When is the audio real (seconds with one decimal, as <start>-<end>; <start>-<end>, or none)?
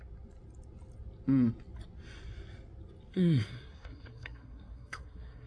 0.0-3.1